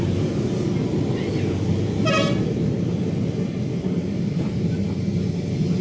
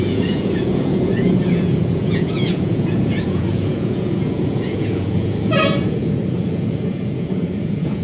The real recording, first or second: first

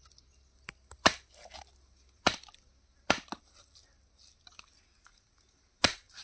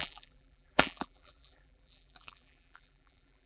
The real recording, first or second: first